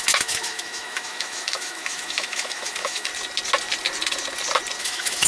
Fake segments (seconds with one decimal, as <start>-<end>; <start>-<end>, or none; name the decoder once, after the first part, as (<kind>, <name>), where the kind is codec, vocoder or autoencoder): 0.0-3.1 (autoencoder, DAC-VAE); 4.8-5.3